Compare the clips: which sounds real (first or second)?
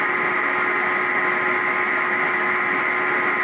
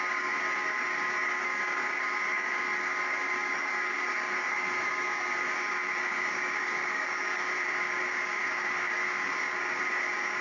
first